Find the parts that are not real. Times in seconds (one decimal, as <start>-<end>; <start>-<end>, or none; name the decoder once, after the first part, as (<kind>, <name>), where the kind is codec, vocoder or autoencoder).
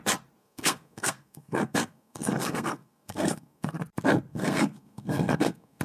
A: 0.4-3.8 (codec, SNAC); 4.3-5.8